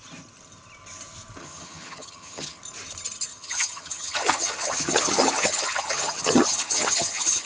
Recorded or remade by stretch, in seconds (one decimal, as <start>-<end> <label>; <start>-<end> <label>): 0.0-1.4 recorded; 1.4-2.6 remade; 2.6-3.3 recorded; 3.3-7.5 remade